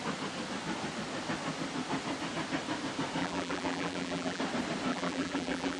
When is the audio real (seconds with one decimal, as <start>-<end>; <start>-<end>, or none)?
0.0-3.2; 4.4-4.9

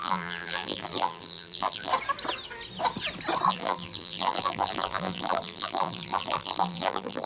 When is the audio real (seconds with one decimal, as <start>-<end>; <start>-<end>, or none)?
1.9-3.5

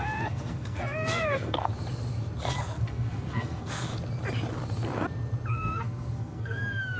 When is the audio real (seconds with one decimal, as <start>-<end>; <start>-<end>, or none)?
1.7-2.6; 3.9-5.5

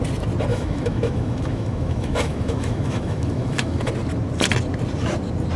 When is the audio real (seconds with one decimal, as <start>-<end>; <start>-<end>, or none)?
0.0-0.5; 3.9-5.6

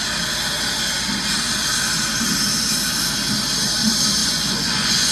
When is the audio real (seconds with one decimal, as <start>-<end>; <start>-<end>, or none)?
0.0-4.2